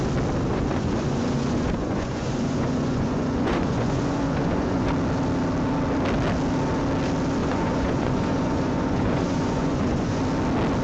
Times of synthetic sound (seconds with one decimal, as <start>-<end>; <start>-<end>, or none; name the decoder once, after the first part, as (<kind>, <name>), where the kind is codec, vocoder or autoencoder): 0.5-4.9 (vocoder, Vocos); 7.4-10.2